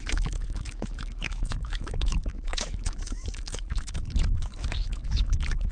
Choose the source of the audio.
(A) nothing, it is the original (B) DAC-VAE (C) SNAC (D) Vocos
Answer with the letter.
B